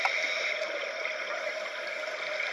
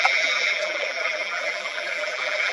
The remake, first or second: second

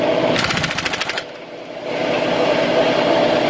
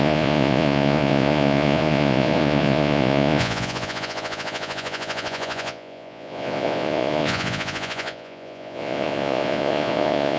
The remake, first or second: second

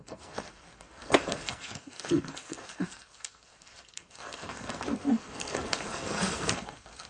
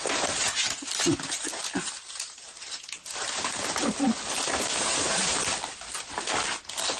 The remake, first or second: first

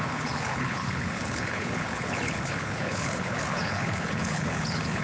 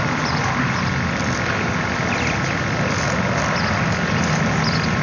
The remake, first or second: first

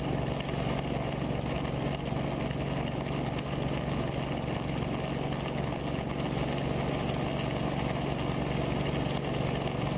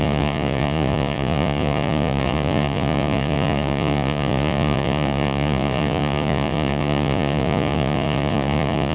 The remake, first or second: second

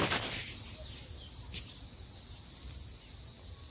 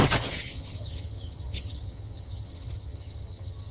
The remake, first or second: second